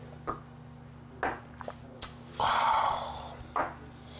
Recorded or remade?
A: recorded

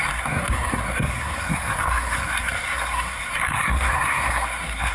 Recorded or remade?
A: remade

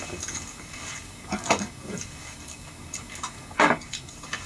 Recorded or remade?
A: remade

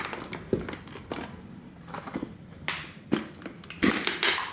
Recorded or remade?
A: recorded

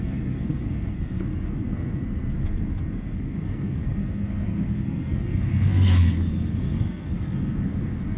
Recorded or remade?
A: remade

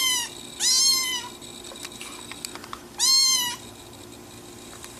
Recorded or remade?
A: recorded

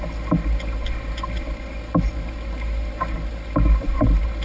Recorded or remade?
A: recorded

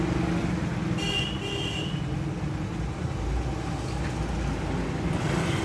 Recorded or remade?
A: recorded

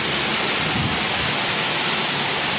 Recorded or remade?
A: recorded